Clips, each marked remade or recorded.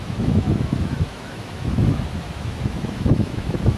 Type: remade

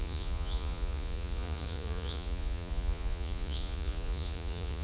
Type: remade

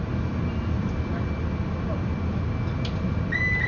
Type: recorded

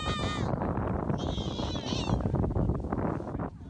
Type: recorded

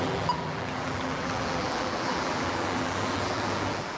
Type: remade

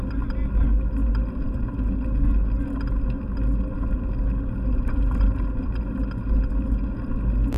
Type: recorded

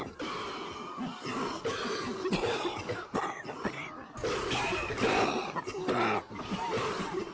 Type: recorded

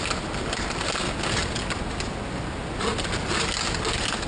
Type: recorded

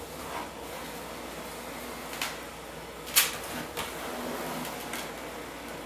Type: recorded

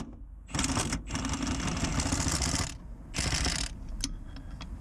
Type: recorded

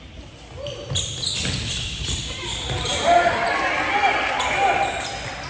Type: recorded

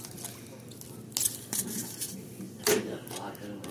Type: recorded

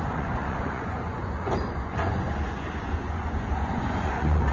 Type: remade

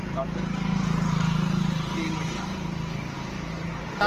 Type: recorded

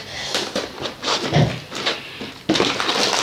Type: recorded